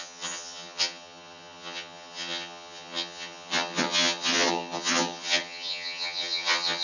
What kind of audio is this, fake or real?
fake